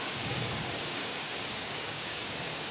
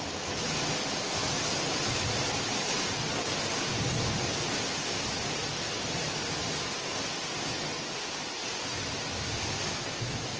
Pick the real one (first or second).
second